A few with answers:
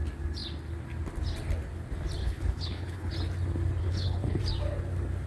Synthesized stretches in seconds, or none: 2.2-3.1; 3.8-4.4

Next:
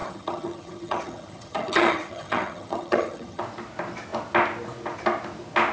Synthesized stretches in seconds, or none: 0.0-3.4

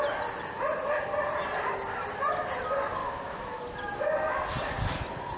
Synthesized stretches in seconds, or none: 3.0-3.6

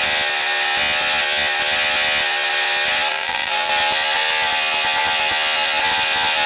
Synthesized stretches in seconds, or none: 3.1-3.7

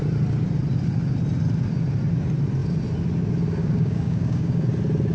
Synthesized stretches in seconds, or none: 3.6-4.6

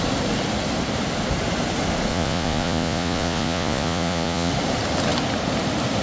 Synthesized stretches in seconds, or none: 2.1-4.5

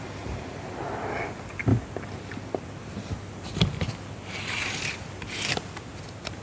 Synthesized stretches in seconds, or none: none

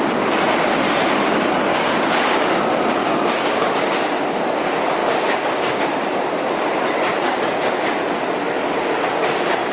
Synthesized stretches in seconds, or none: 1.7-2.4; 3.0-3.7; 5.0-5.8